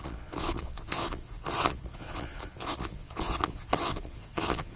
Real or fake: fake